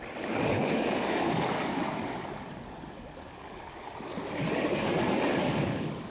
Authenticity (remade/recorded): remade